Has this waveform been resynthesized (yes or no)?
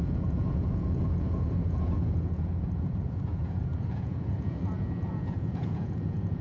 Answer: yes